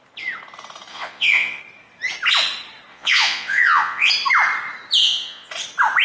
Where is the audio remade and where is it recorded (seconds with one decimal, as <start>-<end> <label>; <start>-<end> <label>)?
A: 0.0-0.9 recorded; 0.9-1.6 remade; 1.6-2.9 recorded; 2.9-4.1 remade; 4.1-5.0 recorded; 5.0-5.5 remade; 5.5-6.0 recorded